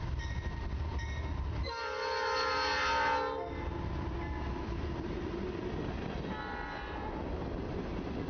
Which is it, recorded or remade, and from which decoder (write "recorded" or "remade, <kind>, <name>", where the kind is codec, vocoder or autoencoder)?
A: recorded